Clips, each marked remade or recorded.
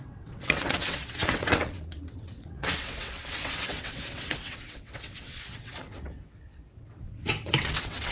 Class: remade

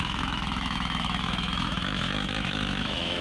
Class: remade